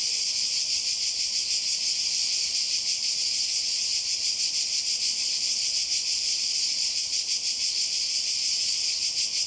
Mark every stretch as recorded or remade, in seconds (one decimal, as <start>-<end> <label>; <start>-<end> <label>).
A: 0.0-0.6 recorded; 0.6-1.4 remade; 1.4-2.2 recorded; 2.2-3.2 remade; 3.2-3.9 recorded; 3.9-7.5 remade; 7.5-9.5 recorded